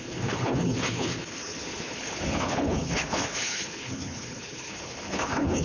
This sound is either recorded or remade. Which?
remade